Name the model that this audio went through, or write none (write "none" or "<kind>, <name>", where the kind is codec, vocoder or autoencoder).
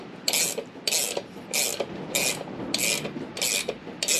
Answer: none